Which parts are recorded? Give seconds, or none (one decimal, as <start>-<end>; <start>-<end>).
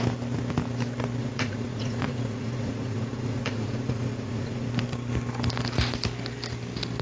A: 0.0-1.2; 4.7-7.0